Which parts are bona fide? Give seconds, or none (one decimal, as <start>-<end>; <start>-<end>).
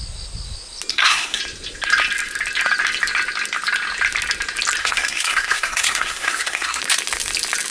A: 0.0-0.9; 1.4-4.8; 6.8-7.7